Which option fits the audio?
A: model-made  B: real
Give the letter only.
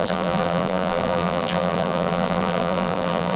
A